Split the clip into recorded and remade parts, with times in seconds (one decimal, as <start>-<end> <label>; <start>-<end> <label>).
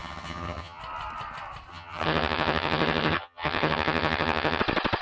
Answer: 0.0-0.8 remade; 0.8-1.7 recorded; 1.7-4.6 remade; 4.6-5.0 recorded